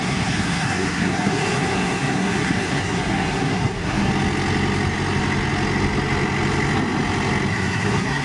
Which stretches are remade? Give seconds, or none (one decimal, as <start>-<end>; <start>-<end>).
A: 0.0-4.1; 7.5-8.2